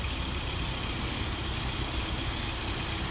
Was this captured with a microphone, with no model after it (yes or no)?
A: yes